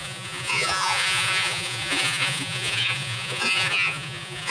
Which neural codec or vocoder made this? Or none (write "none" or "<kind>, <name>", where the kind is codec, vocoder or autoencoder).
vocoder, Vocos